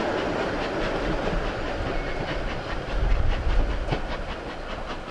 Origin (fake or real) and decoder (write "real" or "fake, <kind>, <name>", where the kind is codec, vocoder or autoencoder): real